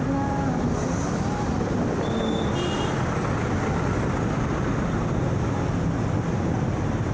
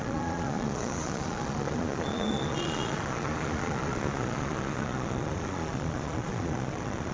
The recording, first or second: first